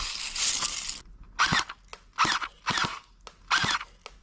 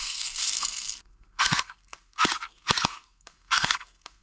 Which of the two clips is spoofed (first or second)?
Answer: second